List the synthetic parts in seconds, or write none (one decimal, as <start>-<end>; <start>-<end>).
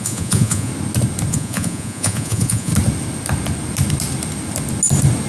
0.0-0.7; 1.3-2.7